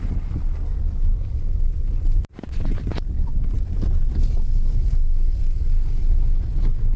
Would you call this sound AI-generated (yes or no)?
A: no